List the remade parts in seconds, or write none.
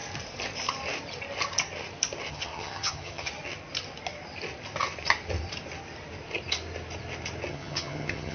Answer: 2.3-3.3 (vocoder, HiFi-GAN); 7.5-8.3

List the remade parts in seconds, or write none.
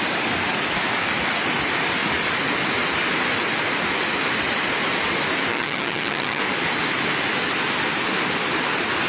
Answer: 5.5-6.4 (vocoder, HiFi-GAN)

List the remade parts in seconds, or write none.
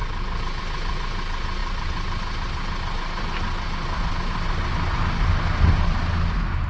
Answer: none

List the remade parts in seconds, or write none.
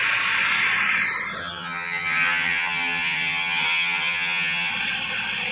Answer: 1.4-4.7 (vocoder, HiFi-GAN)